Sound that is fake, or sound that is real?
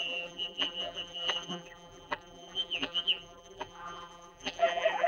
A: fake